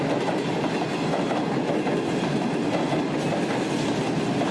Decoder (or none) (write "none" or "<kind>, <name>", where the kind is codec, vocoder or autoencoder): none